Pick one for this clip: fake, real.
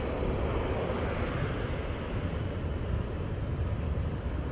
real